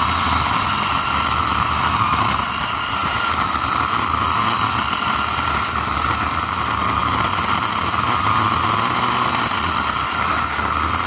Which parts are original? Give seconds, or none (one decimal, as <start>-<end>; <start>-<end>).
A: 0.0-11.1